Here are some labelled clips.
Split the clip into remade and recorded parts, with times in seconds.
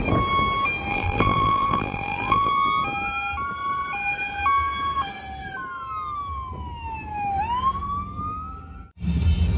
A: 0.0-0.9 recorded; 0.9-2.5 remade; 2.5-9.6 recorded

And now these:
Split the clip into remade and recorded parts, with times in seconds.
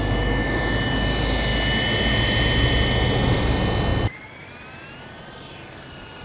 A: 0.0-3.9 recorded; 3.9-4.5 remade; 4.5-6.2 recorded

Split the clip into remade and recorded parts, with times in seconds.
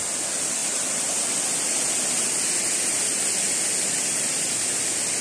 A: 0.0-5.2 recorded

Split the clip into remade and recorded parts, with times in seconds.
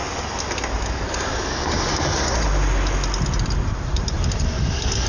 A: 0.0-3.7 recorded; 3.7-4.6 remade; 4.6-5.1 recorded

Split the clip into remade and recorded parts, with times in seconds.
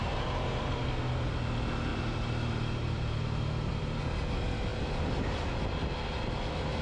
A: 0.0-0.6 remade; 0.6-1.9 recorded; 1.9-4.0 remade; 4.0-6.8 recorded